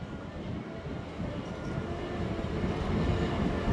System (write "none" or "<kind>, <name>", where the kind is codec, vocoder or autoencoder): none